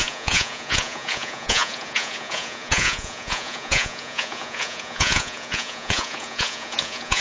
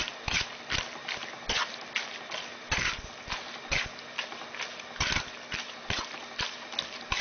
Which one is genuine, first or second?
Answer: second